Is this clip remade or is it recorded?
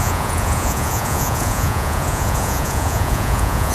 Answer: remade